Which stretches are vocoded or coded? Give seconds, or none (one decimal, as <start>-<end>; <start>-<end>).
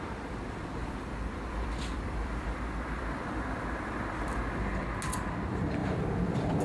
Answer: 0.8-4.8; 5.8-6.6